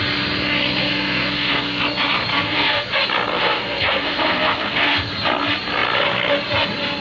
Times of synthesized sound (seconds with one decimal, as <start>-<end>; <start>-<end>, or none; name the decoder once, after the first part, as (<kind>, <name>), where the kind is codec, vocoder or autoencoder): 0.8-1.8 (codec, SNAC); 2.3-2.9; 3.3-5.1